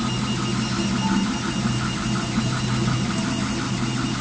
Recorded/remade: recorded